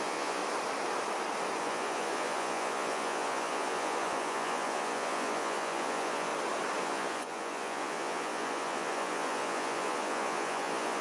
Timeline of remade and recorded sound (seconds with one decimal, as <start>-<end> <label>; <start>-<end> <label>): 0.0-0.4 remade; 0.4-1.6 recorded; 1.6-6.3 remade; 6.3-6.8 recorded; 6.8-11.0 remade